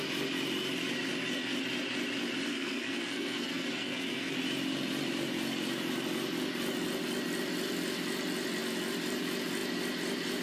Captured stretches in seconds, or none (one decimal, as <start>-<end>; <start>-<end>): 0.0-2.5; 4.3-10.4